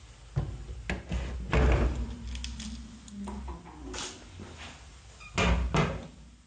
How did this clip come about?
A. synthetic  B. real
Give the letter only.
B